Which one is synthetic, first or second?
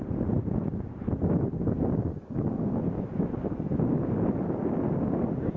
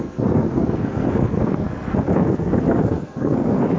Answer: second